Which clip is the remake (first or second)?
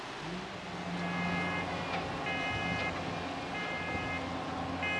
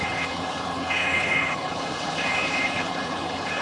second